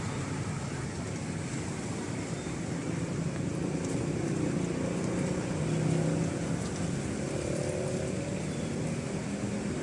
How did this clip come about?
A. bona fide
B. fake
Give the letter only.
A